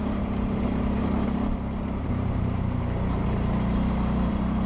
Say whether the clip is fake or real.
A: fake